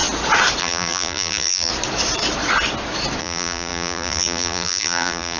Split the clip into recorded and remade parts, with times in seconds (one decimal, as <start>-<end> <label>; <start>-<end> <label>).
0.0-0.6 recorded; 0.6-1.7 remade; 1.7-3.2 recorded; 3.2-5.4 remade